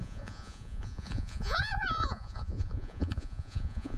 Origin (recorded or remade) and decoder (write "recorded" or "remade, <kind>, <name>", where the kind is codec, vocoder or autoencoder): remade, vocoder, Vocos